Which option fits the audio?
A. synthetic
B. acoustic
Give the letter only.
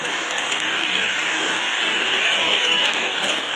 A